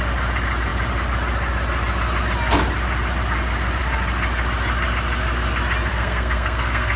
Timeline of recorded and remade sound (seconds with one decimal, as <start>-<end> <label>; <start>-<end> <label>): 0.0-5.9 recorded; 5.9-7.0 remade